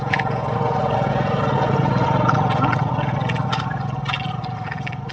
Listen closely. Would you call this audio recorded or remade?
recorded